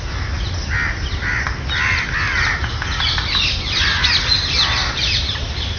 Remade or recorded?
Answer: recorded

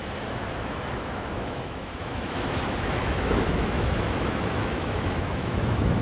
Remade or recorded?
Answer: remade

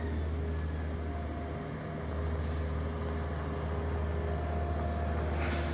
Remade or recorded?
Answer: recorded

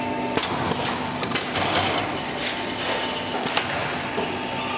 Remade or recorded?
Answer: recorded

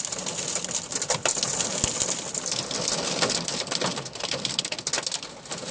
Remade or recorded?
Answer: recorded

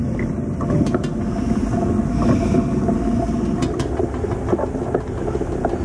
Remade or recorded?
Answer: recorded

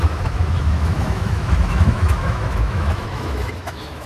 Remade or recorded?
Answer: remade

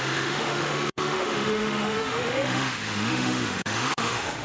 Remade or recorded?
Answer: remade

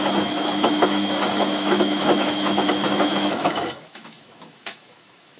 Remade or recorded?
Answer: remade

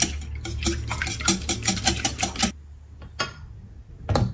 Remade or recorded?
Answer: recorded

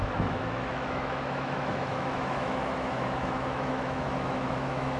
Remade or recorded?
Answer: remade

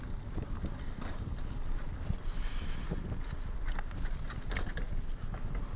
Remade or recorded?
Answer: recorded